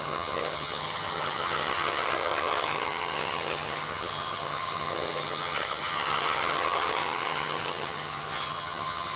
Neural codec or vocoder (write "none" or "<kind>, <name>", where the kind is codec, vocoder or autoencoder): vocoder, HiFi-GAN